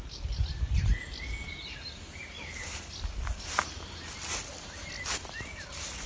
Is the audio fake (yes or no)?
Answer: no